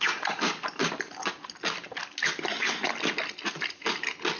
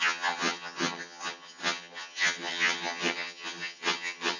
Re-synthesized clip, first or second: second